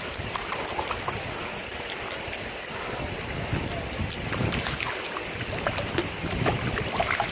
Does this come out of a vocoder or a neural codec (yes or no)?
no